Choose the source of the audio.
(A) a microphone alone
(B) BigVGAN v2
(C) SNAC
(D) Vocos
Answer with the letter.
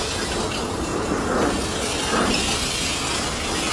A